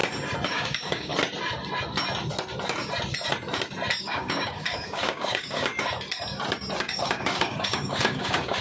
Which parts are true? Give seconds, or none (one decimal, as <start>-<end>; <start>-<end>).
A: 0.0-0.5; 1.1-4.0; 5.7-6.8